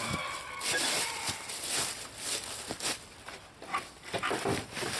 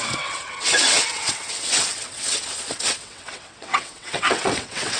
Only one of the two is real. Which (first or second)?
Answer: first